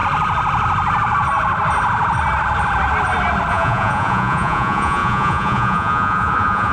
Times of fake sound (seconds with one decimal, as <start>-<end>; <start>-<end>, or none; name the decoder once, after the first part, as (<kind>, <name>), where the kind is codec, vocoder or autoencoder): 3.5-6.7 (vocoder, Vocos)